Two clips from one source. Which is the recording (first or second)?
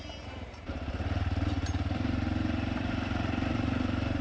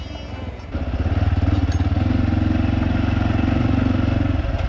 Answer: second